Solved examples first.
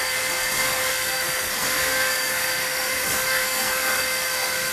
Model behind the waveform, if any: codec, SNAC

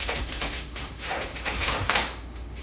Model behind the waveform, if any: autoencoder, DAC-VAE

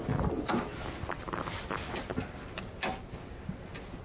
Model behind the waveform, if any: none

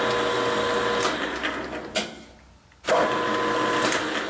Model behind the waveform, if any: none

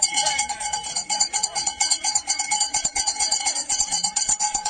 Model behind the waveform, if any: vocoder, Vocos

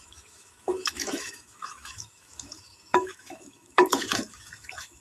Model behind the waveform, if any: autoencoder, DAC-VAE